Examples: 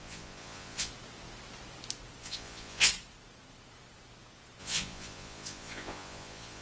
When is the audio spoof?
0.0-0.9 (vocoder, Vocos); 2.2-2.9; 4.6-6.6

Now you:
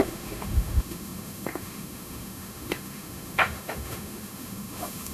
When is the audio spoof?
0.0-5.1 (autoencoder, DAC-VAE)